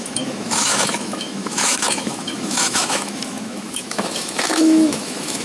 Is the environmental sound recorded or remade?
remade